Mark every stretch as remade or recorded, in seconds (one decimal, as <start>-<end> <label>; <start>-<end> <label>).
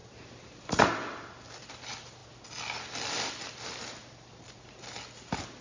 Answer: 0.0-5.6 recorded